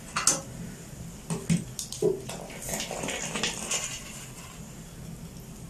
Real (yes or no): yes